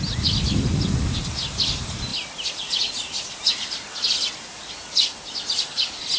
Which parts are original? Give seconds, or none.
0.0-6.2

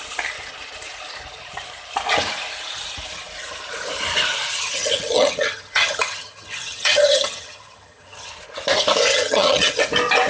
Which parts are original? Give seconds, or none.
0.0-4.5; 8.3-9.1; 9.8-10.3

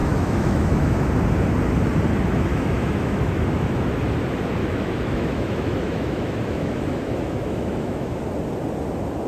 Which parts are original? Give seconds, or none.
1.1-2.5; 4.0-4.6; 8.2-9.3

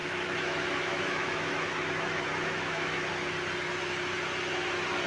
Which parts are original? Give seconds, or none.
3.1-5.1

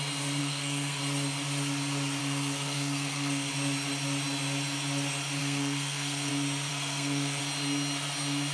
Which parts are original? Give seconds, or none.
0.0-0.4; 1.0-2.2; 3.5-5.4; 6.3-6.7; 7.4-8.5

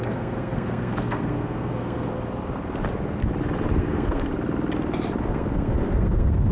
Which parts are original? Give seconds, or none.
2.1-3.8; 4.3-5.2

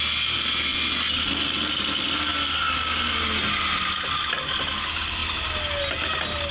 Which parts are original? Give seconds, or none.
0.0-6.5